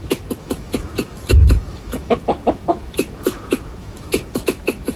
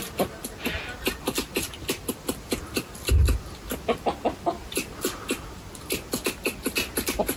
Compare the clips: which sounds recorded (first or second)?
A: second